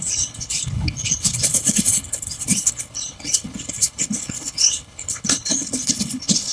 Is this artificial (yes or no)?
yes